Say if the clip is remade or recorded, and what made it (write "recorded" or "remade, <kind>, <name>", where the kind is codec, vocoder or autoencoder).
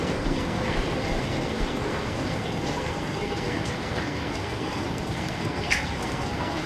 remade, codec, SNAC